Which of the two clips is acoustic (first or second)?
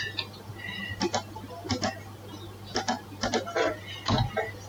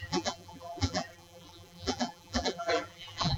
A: first